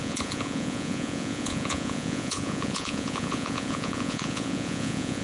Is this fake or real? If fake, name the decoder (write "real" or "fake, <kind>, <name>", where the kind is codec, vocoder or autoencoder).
fake, vocoder, Vocos